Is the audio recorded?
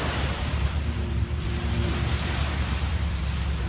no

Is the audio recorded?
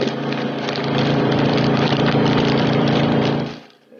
no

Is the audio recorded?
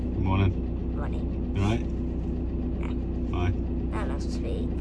yes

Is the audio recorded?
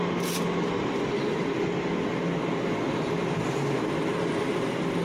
yes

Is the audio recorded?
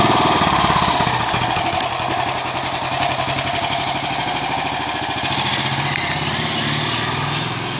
yes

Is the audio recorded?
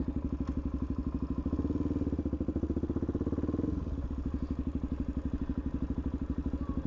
yes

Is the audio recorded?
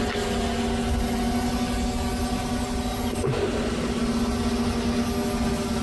yes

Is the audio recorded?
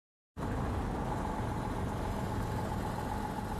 yes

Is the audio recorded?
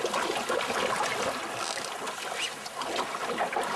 yes